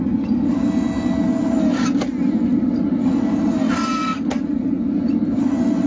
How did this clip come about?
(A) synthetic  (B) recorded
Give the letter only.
B